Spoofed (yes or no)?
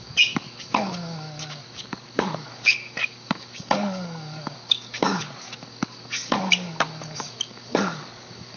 yes